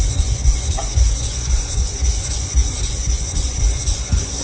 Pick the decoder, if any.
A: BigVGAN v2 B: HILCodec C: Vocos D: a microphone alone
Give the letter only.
C